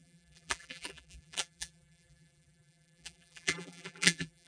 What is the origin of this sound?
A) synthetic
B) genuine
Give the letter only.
A